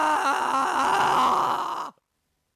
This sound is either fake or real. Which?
real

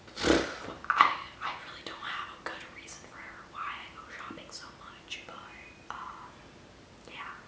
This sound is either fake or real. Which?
real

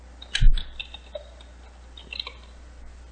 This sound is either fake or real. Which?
real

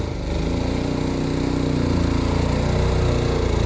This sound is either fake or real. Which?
real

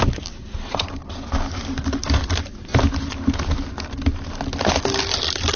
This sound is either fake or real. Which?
real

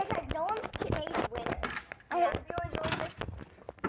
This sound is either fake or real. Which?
real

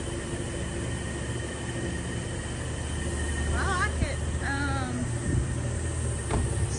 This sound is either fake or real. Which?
real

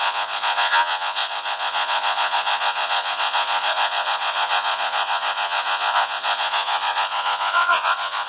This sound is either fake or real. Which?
fake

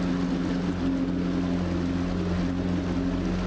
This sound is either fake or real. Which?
real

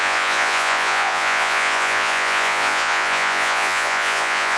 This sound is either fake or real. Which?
fake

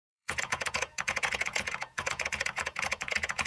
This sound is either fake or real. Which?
fake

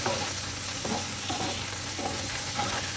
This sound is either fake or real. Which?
fake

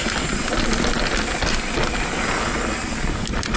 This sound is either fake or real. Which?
real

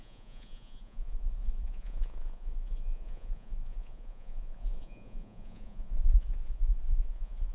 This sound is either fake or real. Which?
fake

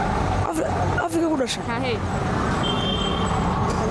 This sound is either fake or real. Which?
real